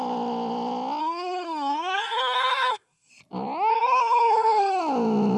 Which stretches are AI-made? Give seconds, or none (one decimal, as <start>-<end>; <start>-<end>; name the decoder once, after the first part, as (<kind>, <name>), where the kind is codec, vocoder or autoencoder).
1.0-3.1 (codec, SNAC); 3.7-4.8